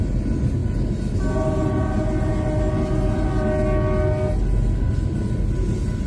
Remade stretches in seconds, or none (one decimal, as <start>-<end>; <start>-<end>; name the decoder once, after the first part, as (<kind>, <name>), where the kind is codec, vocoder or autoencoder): none